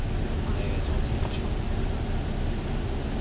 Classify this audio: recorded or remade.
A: recorded